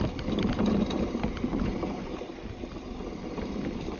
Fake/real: real